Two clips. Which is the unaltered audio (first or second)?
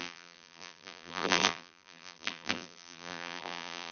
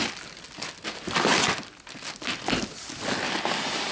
second